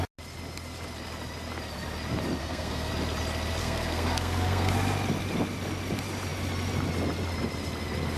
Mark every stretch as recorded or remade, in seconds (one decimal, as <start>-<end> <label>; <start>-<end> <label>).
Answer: 0.0-2.4 recorded; 2.4-2.9 remade; 2.9-3.6 recorded; 3.6-4.7 remade; 4.7-8.2 recorded